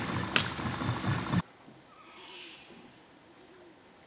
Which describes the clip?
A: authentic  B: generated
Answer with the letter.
A